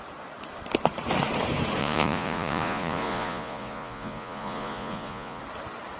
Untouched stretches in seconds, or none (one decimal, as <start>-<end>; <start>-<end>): 0.0-1.8; 5.4-6.0